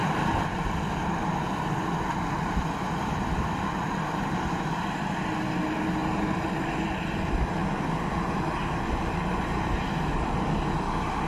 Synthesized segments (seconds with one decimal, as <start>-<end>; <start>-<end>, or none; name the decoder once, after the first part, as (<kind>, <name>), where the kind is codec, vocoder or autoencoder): 6.0-6.8 (vocoder, BigVGAN v2)